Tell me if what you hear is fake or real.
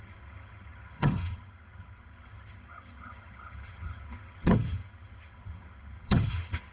fake